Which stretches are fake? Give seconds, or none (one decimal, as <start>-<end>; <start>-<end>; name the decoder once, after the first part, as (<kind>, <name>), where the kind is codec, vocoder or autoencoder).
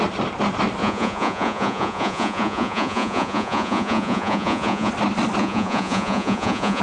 0.8-4.9 (vocoder, Vocos); 5.4-6.8